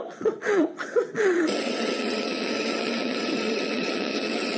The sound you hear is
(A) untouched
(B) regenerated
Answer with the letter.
B